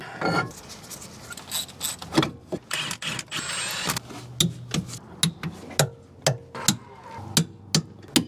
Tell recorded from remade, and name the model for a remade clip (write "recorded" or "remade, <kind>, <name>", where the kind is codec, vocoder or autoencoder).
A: recorded